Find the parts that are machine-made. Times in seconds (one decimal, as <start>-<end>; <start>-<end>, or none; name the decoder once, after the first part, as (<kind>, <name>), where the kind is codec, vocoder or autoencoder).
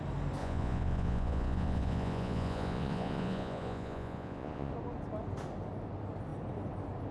0.4-4.7 (vocoder, Vocos)